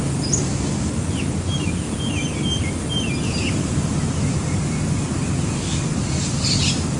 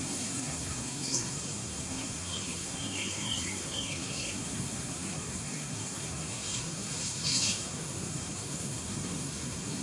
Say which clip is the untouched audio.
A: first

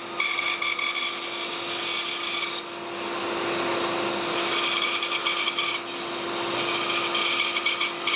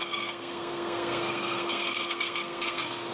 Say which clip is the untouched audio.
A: first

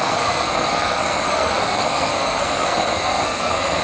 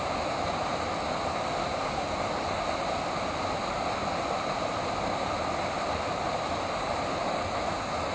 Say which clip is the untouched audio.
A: second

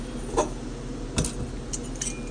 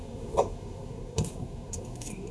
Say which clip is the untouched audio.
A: first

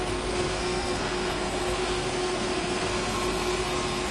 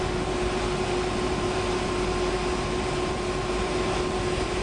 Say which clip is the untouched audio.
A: second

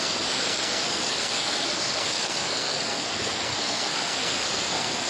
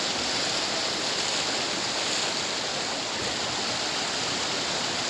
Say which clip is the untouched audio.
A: second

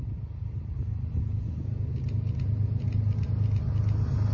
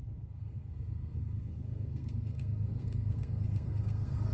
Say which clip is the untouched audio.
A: first